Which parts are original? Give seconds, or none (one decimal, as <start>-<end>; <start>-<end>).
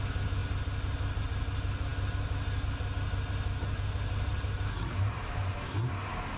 0.0-6.4